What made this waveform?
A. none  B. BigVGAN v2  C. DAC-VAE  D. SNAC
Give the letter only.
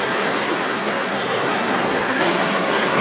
D